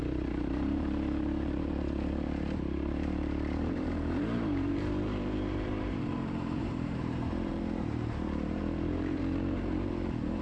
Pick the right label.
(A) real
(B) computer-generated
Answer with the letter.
B